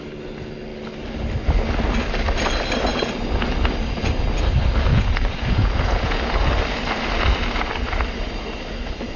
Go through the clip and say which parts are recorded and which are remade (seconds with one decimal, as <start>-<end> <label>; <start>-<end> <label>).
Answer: 0.0-4.9 recorded; 4.9-6.2 remade; 6.2-9.2 recorded